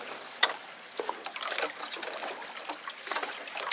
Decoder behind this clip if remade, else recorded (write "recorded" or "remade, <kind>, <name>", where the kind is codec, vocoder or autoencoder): recorded